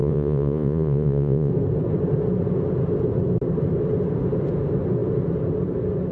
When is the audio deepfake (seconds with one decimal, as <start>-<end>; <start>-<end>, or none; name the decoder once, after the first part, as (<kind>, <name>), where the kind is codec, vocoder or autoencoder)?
0.0-1.5 (vocoder, Vocos)